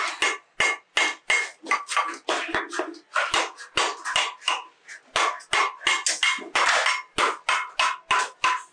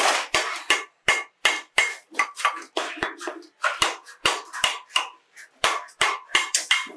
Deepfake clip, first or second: second